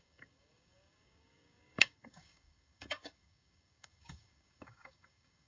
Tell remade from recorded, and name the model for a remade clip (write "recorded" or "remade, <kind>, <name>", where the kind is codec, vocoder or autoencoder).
remade, codec, DAC